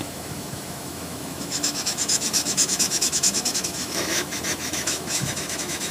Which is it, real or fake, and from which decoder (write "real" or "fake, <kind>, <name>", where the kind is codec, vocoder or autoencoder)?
fake, autoencoder, DAC-VAE